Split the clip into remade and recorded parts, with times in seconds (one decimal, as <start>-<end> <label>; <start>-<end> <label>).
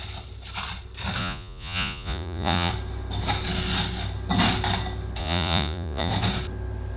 0.0-1.2 recorded; 1.2-2.7 remade; 2.7-5.2 recorded; 5.2-6.1 remade; 6.1-7.0 recorded